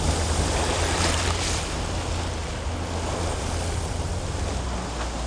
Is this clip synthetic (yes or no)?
no